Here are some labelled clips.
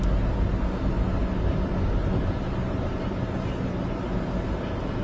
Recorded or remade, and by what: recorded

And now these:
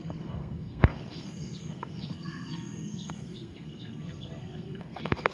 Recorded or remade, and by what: remade, codec, SNAC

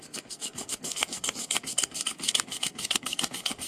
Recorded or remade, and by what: remade, codec, SNAC